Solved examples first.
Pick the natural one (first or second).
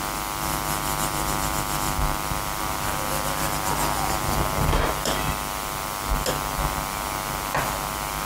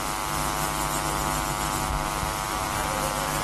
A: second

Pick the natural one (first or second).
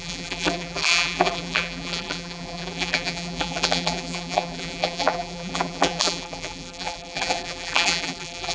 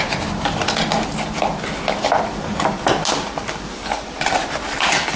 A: second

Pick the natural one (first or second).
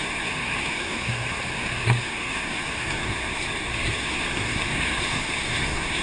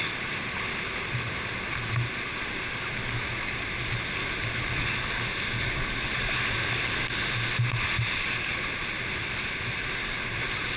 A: second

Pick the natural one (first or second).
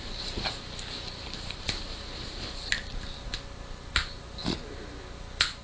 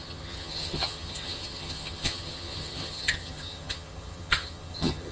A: first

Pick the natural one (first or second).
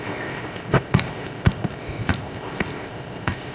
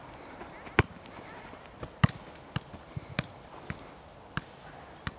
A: second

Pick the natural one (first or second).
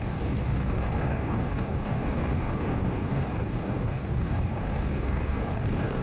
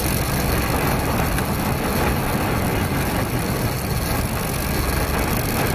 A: second